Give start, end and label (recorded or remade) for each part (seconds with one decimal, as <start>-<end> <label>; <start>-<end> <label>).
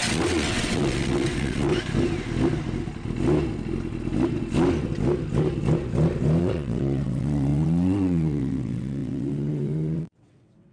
0.0-1.7 remade; 1.7-6.4 recorded; 6.4-10.7 remade